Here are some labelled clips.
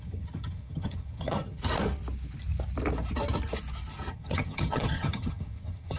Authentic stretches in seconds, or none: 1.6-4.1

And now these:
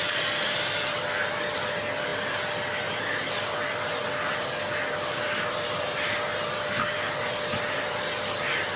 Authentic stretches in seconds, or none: 0.0-8.8

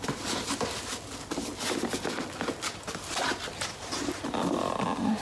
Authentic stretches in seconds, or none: 0.0-5.2

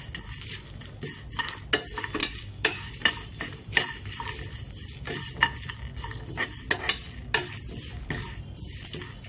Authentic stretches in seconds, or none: 0.0-2.2; 2.9-9.3

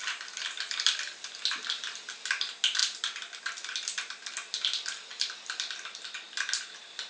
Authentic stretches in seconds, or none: 0.0-7.1

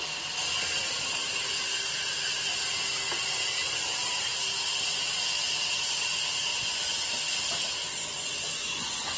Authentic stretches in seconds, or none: 0.0-6.5; 7.2-7.8

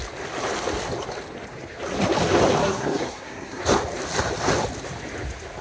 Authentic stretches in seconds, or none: 0.0-2.6; 3.6-5.6